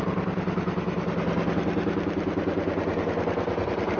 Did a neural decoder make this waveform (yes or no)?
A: no